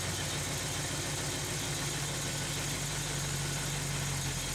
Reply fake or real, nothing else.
real